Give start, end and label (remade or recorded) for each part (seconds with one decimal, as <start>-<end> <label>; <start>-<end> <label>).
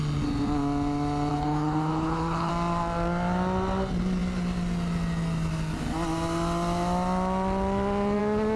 0.0-1.3 recorded; 1.3-2.5 remade; 2.5-8.6 recorded